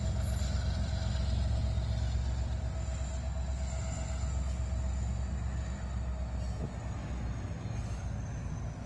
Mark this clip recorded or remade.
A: recorded